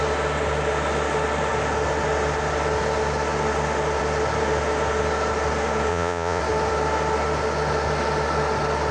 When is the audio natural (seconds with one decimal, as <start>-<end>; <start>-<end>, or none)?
0.0-5.9; 6.4-8.9